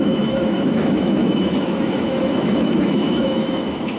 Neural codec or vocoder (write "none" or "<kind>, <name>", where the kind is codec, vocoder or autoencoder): autoencoder, DAC-VAE